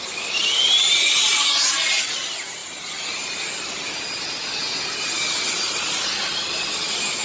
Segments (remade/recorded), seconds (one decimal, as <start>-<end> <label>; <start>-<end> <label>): 0.0-2.6 recorded; 2.6-3.3 remade; 3.3-7.2 recorded